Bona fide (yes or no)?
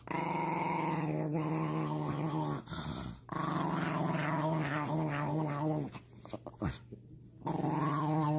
yes